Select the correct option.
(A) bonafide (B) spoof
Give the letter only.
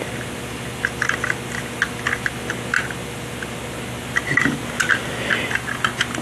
A